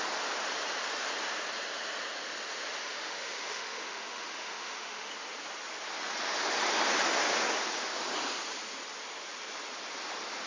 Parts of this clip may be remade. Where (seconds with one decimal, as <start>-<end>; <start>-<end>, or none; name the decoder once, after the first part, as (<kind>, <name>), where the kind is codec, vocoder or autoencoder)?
2.8-5.1 (autoencoder, DAC-VAE)